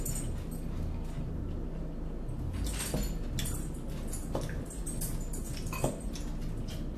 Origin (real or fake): real